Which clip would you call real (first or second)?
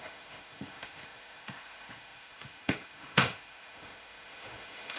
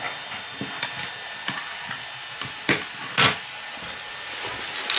second